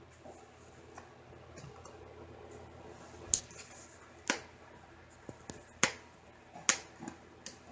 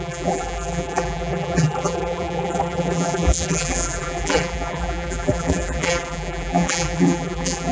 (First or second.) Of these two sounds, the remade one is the second